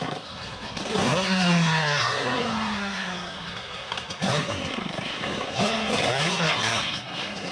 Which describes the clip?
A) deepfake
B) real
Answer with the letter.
A